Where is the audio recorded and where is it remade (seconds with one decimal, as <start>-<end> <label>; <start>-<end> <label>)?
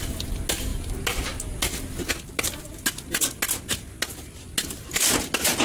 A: 0.0-5.6 recorded